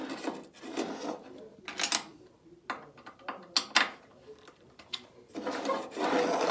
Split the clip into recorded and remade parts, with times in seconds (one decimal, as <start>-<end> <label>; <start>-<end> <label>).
0.0-6.5 recorded